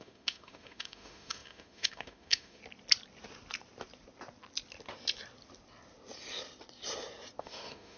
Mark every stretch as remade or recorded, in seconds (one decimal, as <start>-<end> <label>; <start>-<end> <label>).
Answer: 0.0-2.6 remade; 2.6-7.4 recorded; 7.4-8.0 remade